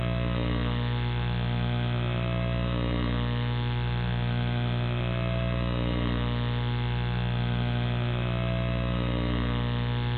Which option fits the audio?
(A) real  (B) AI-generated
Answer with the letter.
B